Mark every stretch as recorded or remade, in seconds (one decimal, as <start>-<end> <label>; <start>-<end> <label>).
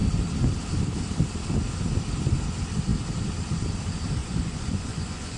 0.0-4.2 recorded; 4.2-5.4 remade